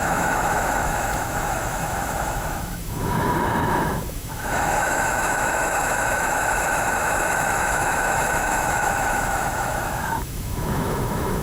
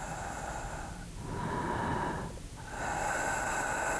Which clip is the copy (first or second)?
first